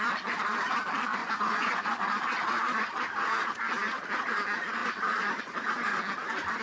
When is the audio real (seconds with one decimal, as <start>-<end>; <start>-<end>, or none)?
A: 0.0-1.2; 2.0-6.6